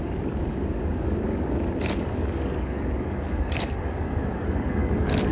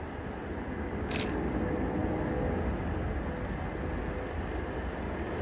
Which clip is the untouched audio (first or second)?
second